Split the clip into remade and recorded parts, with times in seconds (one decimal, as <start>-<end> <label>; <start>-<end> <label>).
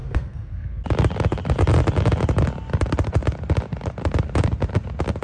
0.0-0.8 remade; 0.8-5.2 recorded